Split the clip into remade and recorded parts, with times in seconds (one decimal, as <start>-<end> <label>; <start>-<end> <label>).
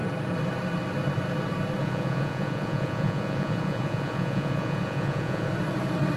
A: 0.0-1.8 recorded; 1.8-5.5 remade; 5.5-6.2 recorded